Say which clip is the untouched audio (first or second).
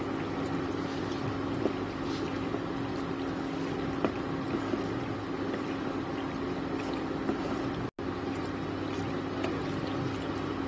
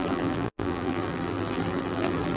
first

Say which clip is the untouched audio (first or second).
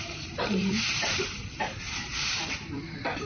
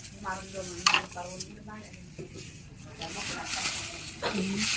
second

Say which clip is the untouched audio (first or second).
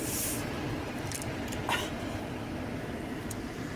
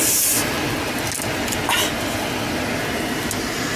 second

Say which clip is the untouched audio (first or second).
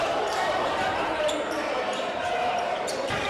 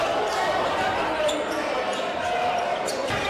second